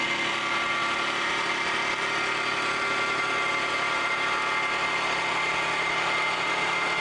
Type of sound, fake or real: real